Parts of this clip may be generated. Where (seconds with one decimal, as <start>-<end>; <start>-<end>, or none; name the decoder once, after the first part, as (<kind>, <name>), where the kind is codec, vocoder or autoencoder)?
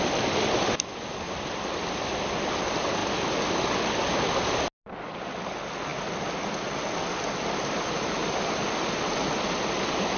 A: none